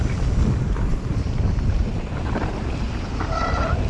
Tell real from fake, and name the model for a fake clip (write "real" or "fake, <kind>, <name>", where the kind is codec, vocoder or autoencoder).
real